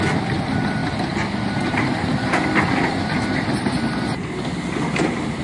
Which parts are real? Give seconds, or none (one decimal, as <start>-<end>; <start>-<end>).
0.0-5.4